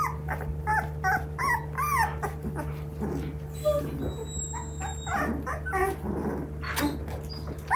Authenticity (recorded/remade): recorded